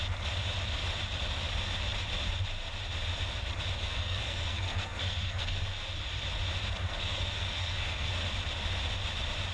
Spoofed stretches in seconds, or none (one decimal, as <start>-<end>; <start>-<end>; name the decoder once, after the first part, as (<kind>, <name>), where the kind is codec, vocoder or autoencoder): 3.8-5.7 (codec, SNAC); 6.8-8.1